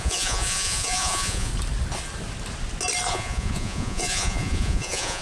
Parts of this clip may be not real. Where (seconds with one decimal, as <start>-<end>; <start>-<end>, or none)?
0.0-1.5; 3.1-5.2